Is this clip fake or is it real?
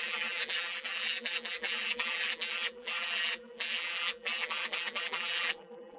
fake